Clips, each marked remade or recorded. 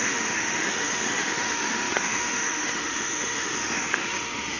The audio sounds remade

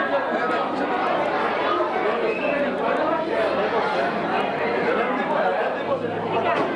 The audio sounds recorded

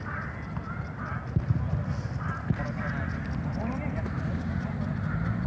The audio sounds recorded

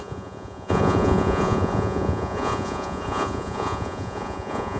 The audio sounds remade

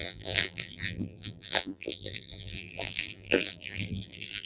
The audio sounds remade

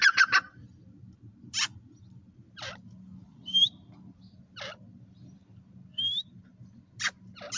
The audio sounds recorded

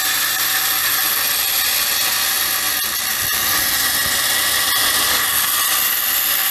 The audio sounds recorded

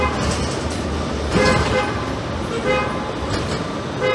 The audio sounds recorded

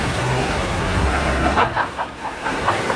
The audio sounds remade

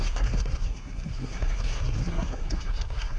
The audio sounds remade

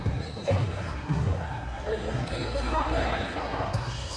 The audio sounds remade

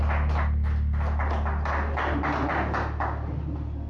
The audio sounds recorded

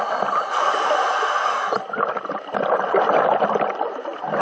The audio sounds remade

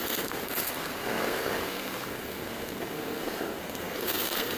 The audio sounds remade